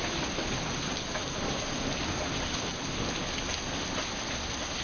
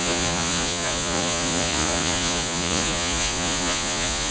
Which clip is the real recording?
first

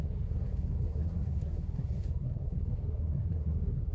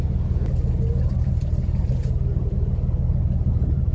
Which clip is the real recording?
second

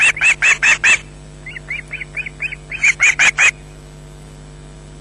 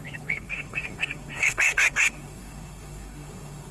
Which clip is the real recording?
first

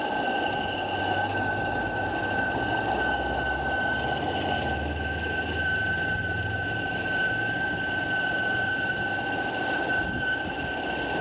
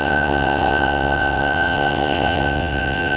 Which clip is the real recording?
first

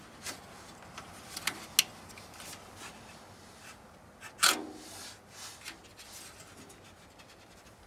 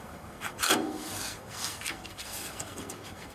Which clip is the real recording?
first